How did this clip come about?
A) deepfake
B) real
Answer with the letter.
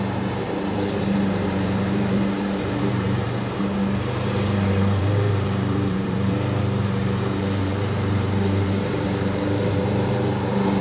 A